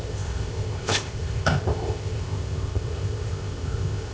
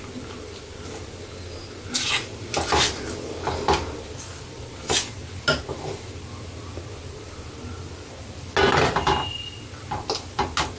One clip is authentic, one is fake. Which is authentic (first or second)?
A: second